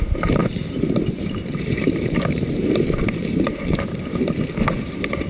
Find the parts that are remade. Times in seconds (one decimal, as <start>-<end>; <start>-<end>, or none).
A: 0.4-3.6